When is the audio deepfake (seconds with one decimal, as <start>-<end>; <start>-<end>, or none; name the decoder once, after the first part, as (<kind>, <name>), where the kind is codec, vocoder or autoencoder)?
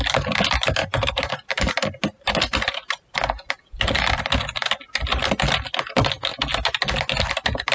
0.8-1.7 (vocoder, BigVGAN v2)